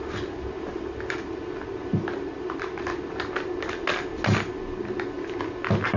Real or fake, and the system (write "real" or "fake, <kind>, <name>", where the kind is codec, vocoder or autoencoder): real